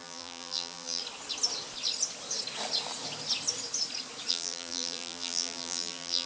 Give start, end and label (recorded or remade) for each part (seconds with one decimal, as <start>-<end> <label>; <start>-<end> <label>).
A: 0.0-1.0 remade; 1.0-4.3 recorded; 4.3-6.3 remade